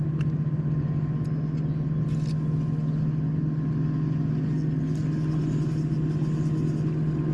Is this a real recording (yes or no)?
yes